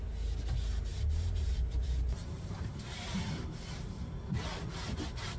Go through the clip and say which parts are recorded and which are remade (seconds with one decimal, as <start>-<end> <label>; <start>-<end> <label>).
0.0-0.9 recorded; 0.9-4.1 remade; 4.1-5.4 recorded